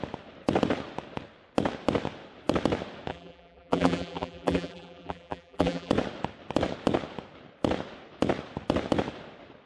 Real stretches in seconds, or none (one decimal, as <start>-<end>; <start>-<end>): 0.0-3.1; 5.9-9.7